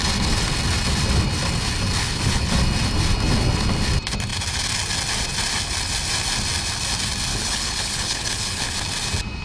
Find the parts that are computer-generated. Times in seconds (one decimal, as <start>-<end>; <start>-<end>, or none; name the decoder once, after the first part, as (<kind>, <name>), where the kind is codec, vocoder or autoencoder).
2.0-2.5 (codec, HILCodec); 7.3-8.7